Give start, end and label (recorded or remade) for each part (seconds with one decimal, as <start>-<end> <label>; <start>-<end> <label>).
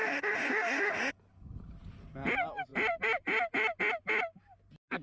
0.0-1.1 remade; 1.1-5.0 recorded